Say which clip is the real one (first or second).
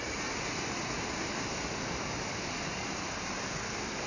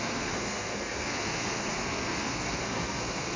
first